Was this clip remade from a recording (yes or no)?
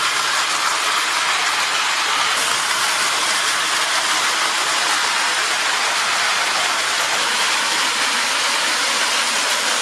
no